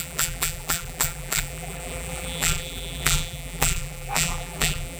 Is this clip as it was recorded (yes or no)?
no